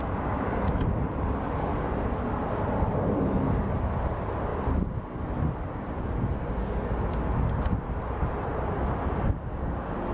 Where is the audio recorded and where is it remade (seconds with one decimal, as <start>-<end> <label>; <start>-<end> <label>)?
0.0-10.1 recorded